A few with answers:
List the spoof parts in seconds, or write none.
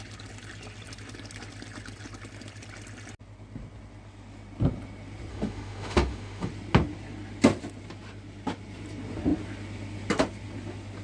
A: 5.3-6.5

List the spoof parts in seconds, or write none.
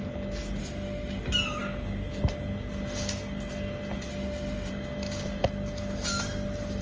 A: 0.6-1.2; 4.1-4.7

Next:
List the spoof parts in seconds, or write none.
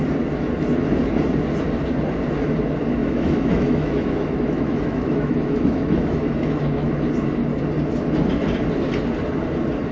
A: 3.0-6.9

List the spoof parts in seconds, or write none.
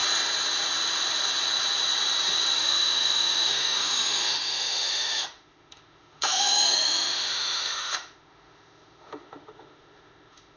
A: 2.6-10.6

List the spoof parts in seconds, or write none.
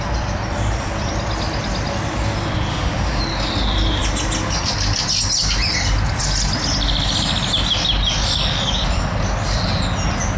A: 2.7-3.2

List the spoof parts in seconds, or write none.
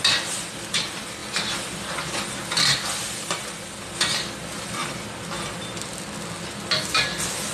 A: none